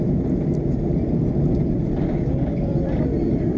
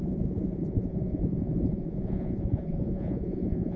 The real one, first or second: first